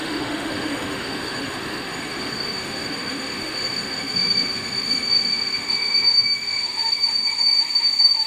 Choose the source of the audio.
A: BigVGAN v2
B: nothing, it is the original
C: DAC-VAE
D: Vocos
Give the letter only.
C